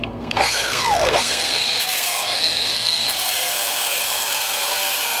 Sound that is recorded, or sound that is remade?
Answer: remade